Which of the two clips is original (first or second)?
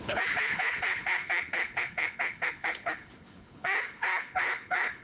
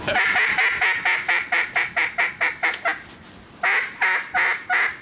second